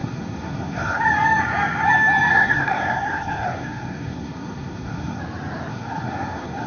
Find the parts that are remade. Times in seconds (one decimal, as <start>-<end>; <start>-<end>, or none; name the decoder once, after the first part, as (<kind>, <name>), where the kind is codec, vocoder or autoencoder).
0.0-1.0 (codec, SNAC); 2.3-5.2; 5.7-6.7